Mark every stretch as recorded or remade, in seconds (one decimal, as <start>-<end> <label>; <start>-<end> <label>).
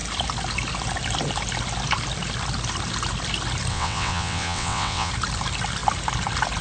0.0-3.7 recorded; 3.7-5.1 remade; 5.1-6.6 recorded